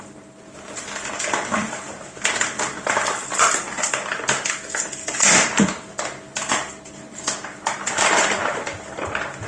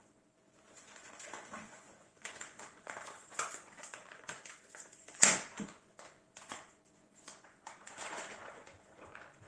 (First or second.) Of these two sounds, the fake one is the second